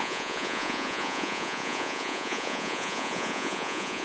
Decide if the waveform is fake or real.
fake